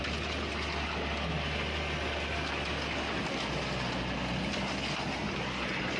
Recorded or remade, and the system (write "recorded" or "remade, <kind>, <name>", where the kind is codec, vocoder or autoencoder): recorded